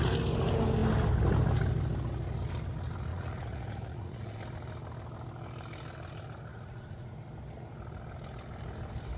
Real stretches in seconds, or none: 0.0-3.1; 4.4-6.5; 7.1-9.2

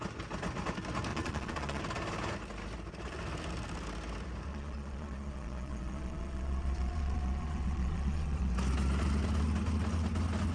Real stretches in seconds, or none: 0.0-1.1; 1.8-4.5; 8.5-10.5

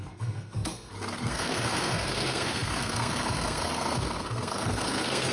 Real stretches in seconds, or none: none

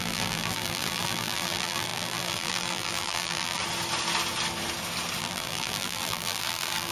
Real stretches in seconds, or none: 3.6-5.2

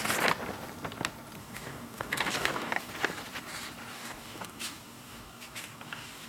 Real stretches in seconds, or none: 0.0-1.4; 2.9-3.9

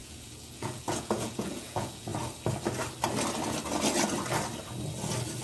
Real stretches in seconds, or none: 2.1-5.4